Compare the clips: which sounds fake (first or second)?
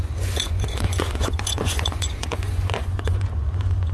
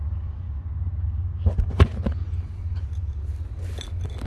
first